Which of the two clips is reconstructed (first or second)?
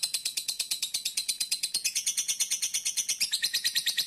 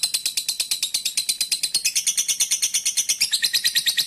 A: first